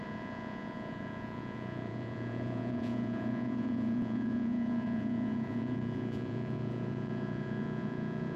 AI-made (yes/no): yes